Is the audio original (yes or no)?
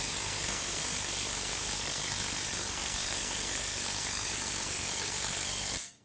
no